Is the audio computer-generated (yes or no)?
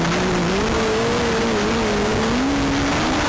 no